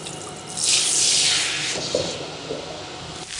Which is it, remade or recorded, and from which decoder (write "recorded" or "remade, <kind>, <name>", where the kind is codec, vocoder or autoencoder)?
recorded